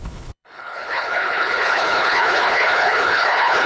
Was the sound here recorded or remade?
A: remade